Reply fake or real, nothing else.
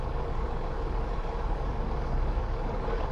fake